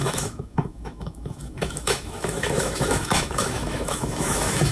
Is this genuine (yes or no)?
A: no